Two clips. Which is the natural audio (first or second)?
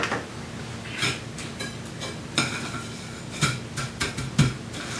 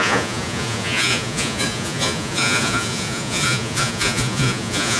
first